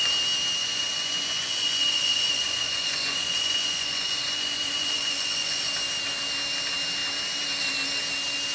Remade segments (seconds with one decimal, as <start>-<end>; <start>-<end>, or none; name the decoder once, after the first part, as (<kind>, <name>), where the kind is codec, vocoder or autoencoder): 0.6-5.7 (vocoder, Vocos)

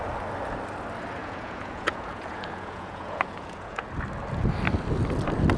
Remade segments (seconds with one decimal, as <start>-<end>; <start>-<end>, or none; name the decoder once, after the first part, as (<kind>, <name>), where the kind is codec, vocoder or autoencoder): 1.2-3.8 (vocoder, Vocos)

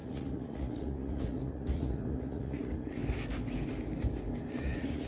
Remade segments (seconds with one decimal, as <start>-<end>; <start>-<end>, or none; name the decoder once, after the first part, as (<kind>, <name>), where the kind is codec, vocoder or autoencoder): 0.0-3.0 (vocoder, Vocos); 4.6-5.1

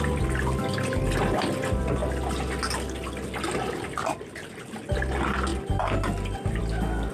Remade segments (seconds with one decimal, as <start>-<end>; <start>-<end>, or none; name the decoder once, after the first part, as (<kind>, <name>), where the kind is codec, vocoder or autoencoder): none

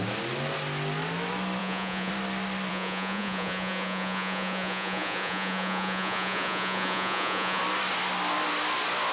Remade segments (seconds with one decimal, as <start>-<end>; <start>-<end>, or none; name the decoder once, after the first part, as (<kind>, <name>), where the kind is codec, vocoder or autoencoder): 1.6-2.1 (vocoder, Vocos); 2.7-7.6

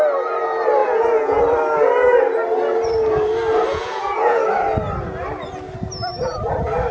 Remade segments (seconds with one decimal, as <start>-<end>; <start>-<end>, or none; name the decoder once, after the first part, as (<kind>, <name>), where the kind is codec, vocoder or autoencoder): 0.8-1.4 (vocoder, Vocos); 3.7-4.4